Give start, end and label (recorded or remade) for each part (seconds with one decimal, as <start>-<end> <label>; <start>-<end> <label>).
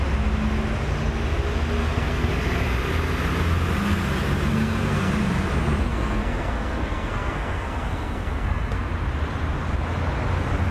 0.0-1.8 recorded; 1.8-2.3 remade; 2.3-4.5 recorded; 4.5-5.1 remade; 5.1-5.9 recorded; 5.9-8.9 remade; 8.9-10.7 recorded